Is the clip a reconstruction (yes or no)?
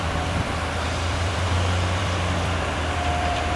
yes